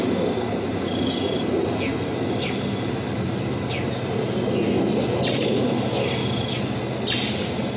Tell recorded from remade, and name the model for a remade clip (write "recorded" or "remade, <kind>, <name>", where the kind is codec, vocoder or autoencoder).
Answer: recorded